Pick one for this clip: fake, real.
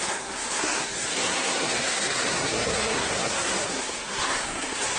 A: fake